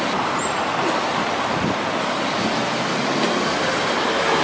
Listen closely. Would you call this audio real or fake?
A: real